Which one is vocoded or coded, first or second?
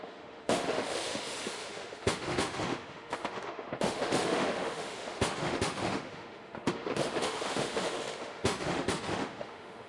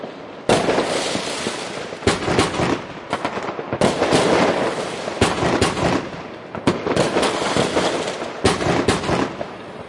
first